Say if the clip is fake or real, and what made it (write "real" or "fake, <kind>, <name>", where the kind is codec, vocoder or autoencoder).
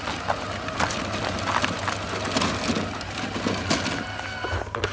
real